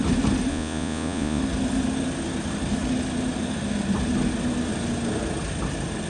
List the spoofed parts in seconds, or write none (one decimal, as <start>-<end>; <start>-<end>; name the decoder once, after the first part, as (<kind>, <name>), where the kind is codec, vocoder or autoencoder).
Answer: 0.5-1.4 (vocoder, Vocos)

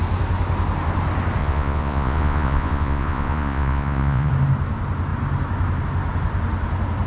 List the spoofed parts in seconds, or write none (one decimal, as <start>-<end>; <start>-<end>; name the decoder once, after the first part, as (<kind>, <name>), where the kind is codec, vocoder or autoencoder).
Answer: 1.4-4.3 (vocoder, Vocos)